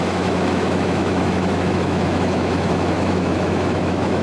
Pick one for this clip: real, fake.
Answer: fake